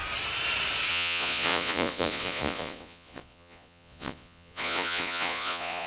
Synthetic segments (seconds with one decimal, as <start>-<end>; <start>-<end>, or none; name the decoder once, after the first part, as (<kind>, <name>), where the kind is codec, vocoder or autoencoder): 0.9-5.9 (vocoder, Vocos)